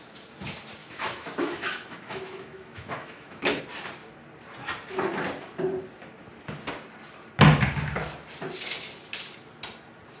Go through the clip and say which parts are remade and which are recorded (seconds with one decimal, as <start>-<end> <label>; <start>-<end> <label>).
0.0-0.8 recorded; 0.8-3.6 remade; 3.6-10.2 recorded